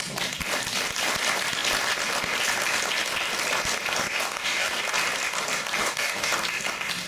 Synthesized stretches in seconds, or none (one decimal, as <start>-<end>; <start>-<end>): 4.0-4.8; 5.8-6.3